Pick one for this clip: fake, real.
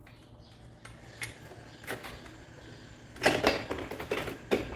real